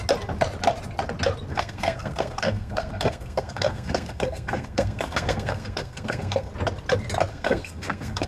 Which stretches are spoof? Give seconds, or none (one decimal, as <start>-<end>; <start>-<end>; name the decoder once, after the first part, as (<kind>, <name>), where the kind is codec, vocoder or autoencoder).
1.5-6.5 (codec, SNAC); 7.3-8.3